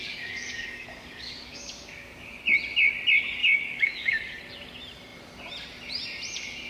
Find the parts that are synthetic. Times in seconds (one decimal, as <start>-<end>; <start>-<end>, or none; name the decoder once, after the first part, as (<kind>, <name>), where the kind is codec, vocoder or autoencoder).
0.0-2.4 (codec, DAC); 3.4-4.4